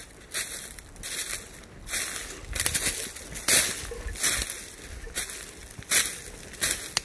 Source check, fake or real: real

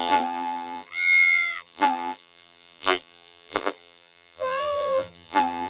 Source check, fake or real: fake